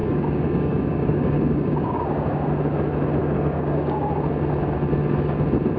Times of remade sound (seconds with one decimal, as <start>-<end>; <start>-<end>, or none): 0.0-2.5; 3.2-4.1